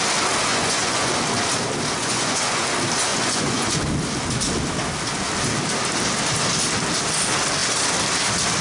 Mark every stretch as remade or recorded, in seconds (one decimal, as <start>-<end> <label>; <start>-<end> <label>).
0.0-0.5 recorded; 0.5-1.1 remade; 1.1-2.0 recorded; 2.0-2.6 remade; 2.6-3.1 recorded; 3.1-3.8 remade; 3.8-8.6 recorded